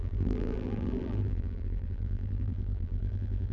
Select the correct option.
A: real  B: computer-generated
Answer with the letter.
B